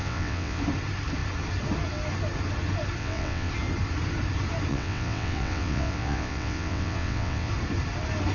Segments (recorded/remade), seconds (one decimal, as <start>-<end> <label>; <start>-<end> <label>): 0.0-0.6 remade; 0.6-3.0 recorded; 3.0-3.5 remade; 3.5-4.7 recorded; 4.7-7.5 remade; 7.5-8.3 recorded